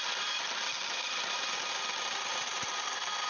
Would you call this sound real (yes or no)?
yes